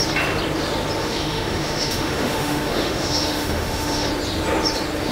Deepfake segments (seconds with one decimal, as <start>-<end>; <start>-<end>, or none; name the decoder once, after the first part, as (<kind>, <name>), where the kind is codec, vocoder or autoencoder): 1.0-4.1 (autoencoder, DAC-VAE)